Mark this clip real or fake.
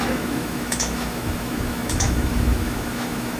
fake